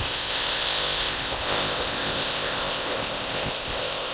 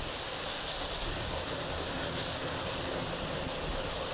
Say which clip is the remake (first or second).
first